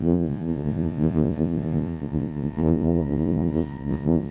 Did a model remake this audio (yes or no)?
yes